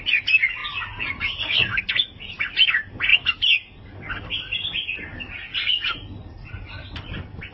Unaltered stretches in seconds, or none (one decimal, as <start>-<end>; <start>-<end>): 0.0-7.5